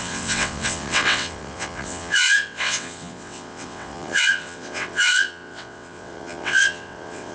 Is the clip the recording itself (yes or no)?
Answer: no